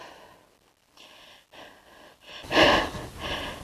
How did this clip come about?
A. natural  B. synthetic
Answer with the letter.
A